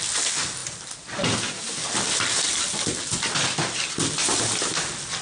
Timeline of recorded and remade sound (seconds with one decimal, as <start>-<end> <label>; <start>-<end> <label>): 0.0-5.2 recorded